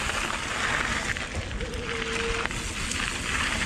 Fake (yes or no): no